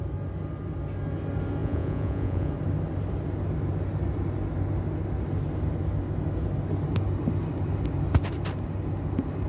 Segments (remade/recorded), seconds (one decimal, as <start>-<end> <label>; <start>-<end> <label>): 0.0-1.6 recorded; 1.6-2.5 remade; 2.5-9.5 recorded